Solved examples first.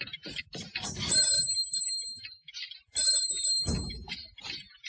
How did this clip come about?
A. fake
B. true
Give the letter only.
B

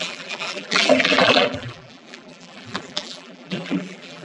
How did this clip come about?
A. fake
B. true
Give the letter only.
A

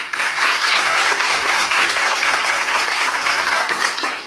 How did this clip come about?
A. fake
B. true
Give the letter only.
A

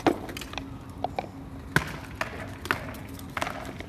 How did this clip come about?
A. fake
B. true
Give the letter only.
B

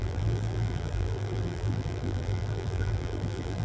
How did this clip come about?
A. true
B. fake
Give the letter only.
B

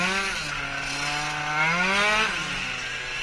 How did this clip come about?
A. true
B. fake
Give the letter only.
A